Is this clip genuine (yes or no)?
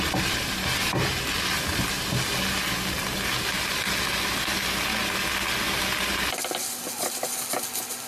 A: yes